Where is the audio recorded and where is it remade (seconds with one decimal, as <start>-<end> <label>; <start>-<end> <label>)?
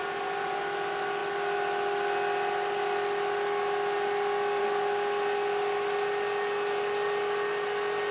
0.0-8.1 recorded